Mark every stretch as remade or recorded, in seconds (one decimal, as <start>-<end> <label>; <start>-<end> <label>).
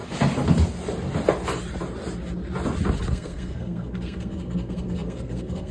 0.0-3.1 recorded; 3.1-5.7 remade